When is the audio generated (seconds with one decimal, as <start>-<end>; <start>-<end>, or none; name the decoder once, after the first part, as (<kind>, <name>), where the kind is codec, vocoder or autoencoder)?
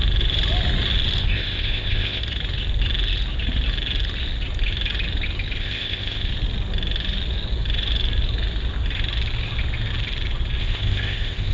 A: 1.2-2.2 (codec, ZipCodec); 5.6-6.3; 10.6-11.5